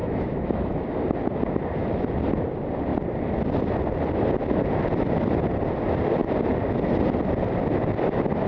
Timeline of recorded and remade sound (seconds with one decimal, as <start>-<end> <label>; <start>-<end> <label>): 0.0-0.7 remade; 0.7-8.5 recorded